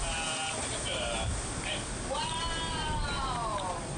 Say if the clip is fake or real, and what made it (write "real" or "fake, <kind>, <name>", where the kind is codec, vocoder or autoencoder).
real